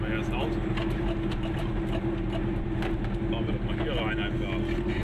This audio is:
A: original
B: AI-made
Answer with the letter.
A